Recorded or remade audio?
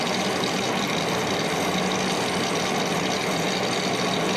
recorded